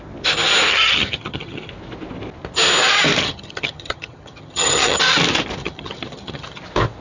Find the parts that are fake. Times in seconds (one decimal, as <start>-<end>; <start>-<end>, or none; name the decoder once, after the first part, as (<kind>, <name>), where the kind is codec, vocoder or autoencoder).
0.7-1.7 (vocoder, HiFi-GAN); 3.2-5.0; 5.6-6.6